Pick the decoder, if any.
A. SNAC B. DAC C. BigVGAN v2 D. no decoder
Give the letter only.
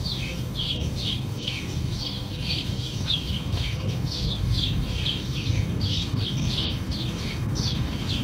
B